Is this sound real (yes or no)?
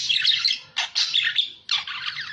yes